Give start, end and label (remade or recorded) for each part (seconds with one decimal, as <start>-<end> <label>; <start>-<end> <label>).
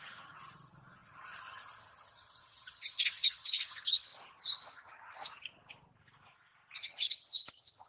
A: 0.0-4.1 remade; 4.1-4.7 recorded; 4.7-5.6 remade; 5.6-6.8 recorded; 6.8-7.9 remade